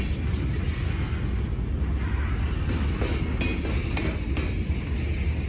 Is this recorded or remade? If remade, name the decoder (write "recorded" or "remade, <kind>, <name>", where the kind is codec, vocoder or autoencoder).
recorded